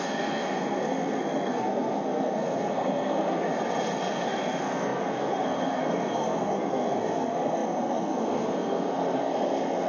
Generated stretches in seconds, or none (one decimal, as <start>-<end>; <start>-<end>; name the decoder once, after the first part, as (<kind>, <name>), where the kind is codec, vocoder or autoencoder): 0.0-3.5 (codec, SNAC); 4.1-9.9